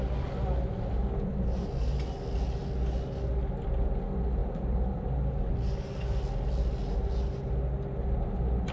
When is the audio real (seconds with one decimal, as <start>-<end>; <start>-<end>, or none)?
0.0-8.7